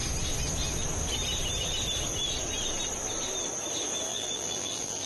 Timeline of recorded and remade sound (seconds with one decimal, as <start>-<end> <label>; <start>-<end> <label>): 0.0-4.1 recorded; 4.1-5.1 remade